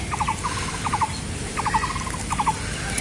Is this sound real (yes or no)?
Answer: yes